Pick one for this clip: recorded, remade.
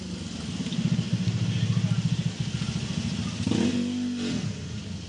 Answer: recorded